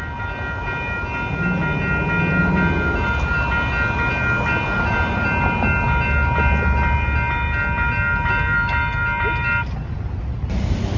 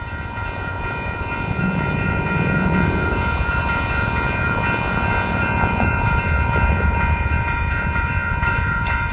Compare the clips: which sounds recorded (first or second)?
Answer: first